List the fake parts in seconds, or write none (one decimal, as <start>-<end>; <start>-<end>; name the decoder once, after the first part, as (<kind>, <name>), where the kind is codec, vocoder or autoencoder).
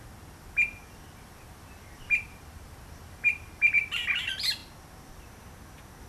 0.8-3.9 (vocoder, BigVGAN v2)